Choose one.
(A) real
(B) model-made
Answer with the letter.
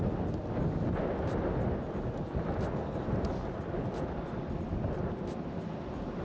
A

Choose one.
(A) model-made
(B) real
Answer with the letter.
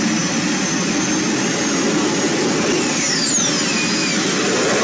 B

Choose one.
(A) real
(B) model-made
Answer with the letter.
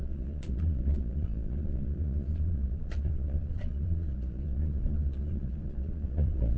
B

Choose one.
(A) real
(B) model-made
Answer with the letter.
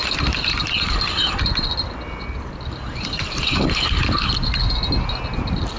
A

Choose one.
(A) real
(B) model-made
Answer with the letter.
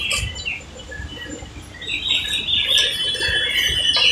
A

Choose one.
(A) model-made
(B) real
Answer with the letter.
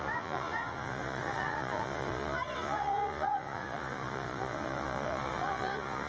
A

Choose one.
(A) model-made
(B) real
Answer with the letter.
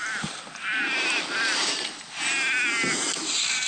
B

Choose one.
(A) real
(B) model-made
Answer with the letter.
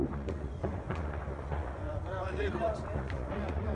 B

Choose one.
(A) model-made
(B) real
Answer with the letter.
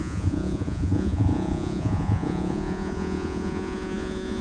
A